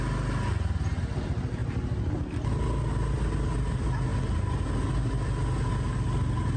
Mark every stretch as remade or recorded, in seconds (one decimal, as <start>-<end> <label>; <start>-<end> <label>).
0.0-6.6 recorded